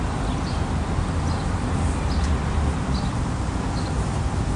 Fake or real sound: real